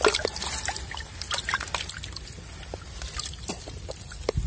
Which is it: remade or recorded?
recorded